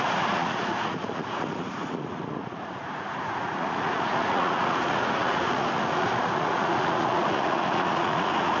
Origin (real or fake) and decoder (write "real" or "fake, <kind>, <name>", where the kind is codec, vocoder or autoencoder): fake, vocoder, Vocos